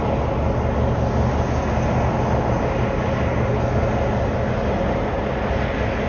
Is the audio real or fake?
real